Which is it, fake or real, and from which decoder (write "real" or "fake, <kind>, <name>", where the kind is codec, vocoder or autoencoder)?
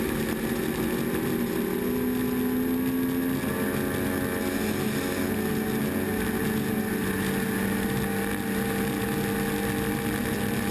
real